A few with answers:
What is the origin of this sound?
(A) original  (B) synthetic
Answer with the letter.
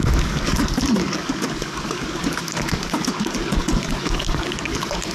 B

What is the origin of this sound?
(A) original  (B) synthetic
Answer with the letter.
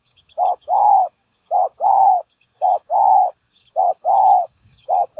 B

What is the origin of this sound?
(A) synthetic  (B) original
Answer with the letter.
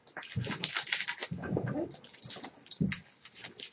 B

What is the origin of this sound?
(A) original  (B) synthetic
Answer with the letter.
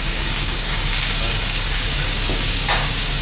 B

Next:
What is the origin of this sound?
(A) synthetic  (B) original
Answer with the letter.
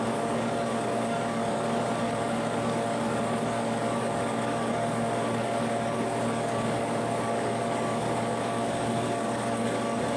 A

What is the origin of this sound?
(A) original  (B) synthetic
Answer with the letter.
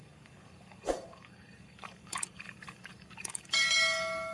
B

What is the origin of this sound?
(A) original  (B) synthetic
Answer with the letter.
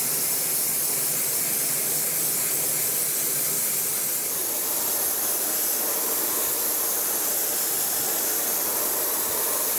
A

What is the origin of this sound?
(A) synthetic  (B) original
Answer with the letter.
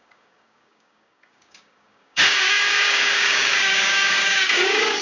A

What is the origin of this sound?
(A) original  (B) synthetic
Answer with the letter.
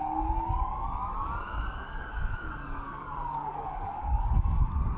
B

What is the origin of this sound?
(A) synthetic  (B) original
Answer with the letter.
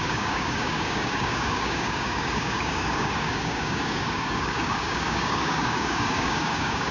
A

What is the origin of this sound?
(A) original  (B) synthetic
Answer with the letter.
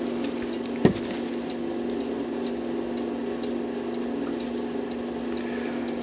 A